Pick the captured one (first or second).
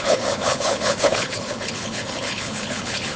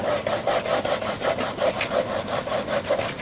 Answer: second